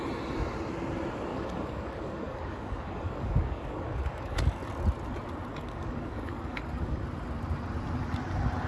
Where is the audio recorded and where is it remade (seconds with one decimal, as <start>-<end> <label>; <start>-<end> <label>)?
0.0-1.3 recorded; 1.3-4.6 remade; 4.6-5.5 recorded; 5.5-7.0 remade; 7.0-8.7 recorded